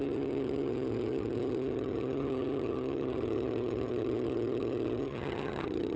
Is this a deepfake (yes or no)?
yes